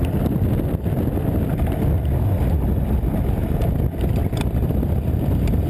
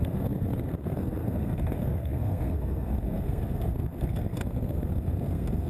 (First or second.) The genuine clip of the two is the first